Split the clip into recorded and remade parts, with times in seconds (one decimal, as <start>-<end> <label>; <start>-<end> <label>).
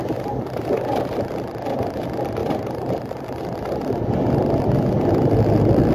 0.0-2.4 recorded; 2.4-3.4 remade; 3.4-5.9 recorded